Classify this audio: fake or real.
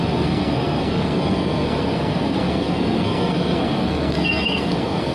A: fake